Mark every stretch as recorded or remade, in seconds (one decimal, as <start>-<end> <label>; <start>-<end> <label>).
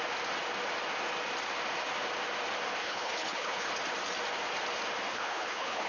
0.0-2.8 recorded; 2.8-3.7 remade; 3.7-5.1 recorded; 5.1-5.9 remade